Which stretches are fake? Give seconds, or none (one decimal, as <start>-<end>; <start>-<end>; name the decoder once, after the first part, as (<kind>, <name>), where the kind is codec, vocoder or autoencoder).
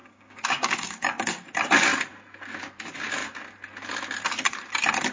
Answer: 0.0-1.5 (codec, DAC)